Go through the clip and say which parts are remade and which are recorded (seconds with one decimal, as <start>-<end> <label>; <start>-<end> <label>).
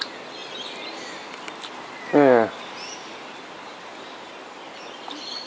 0.0-5.5 recorded